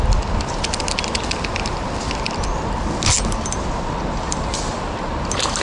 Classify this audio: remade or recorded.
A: recorded